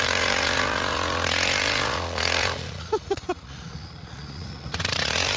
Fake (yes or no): yes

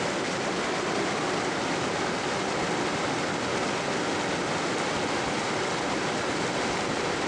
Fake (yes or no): no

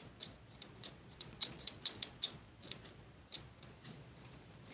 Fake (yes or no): yes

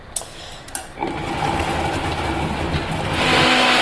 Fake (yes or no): no